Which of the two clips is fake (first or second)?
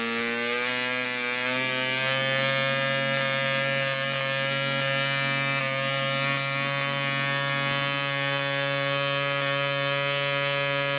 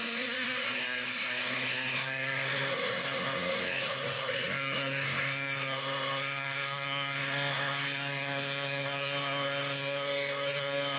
second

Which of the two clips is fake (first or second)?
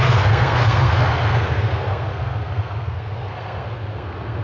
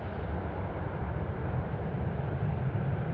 first